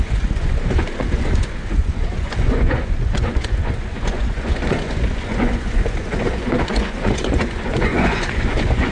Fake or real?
fake